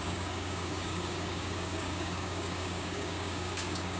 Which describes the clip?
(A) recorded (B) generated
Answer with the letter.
B